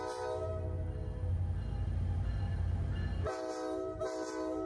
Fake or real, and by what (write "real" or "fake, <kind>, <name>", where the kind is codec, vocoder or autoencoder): real